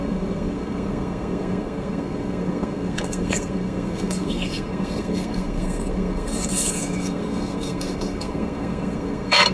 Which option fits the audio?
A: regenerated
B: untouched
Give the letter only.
A